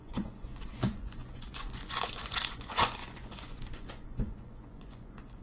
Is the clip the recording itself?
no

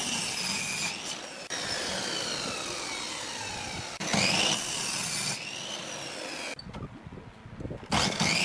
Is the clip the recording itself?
yes